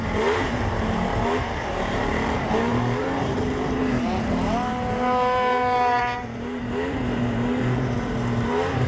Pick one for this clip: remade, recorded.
remade